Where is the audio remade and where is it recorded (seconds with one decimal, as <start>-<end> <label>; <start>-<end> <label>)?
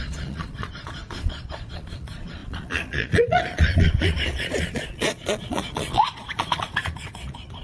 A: 0.0-7.6 remade